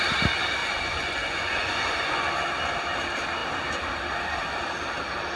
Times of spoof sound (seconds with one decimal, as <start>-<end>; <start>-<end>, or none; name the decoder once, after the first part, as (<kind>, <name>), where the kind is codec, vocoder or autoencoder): 0.6-2.3 (vocoder, Vocos)